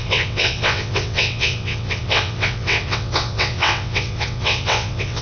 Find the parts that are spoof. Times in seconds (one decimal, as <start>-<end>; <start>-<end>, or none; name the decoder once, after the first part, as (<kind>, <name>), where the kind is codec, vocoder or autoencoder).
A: 0.0-5.2 (vocoder, WaveNeXt)